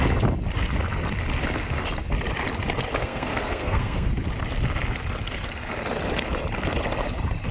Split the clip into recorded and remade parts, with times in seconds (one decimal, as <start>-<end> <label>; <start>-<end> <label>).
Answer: 0.0-3.0 recorded; 3.0-4.1 remade; 4.1-7.5 recorded